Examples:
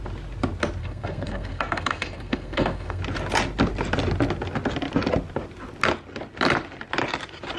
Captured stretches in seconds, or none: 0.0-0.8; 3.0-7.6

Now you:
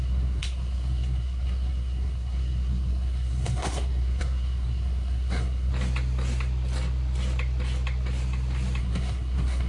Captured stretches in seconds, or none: 5.7-8.8

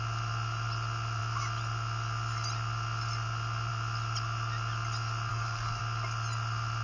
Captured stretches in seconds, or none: 0.0-5.3; 5.8-6.8

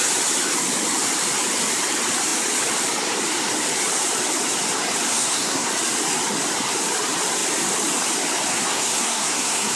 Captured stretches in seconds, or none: 0.0-5.1; 5.7-8.5

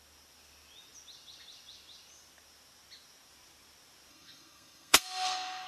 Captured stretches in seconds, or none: 0.0-4.1

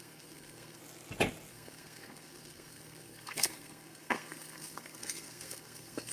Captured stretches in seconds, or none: 0.8-1.5